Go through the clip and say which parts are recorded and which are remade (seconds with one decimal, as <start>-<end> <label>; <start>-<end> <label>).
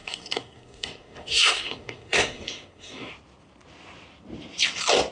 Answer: 0.0-3.1 remade; 3.1-5.1 recorded